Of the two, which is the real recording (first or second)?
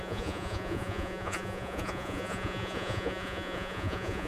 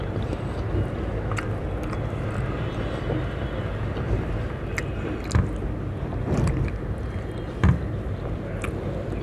second